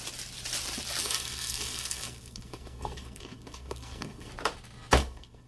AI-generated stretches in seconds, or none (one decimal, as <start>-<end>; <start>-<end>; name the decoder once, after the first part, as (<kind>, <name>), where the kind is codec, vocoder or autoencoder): 1.0-4.3 (codec, SNAC); 5.0-5.5